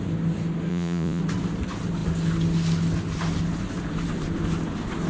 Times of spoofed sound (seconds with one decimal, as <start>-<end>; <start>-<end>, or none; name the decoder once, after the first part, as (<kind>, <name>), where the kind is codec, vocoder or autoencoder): 0.7-1.2 (vocoder, Vocos)